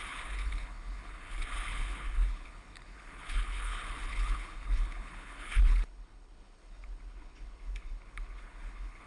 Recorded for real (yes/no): no